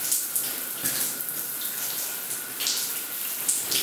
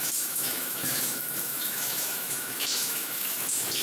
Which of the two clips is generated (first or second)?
second